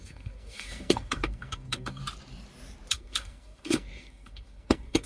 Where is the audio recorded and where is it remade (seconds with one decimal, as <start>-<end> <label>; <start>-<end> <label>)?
0.0-2.0 remade; 2.0-2.9 recorded; 2.9-5.1 remade